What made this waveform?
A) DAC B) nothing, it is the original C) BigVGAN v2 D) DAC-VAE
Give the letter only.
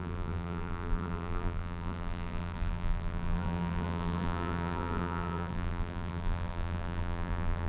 C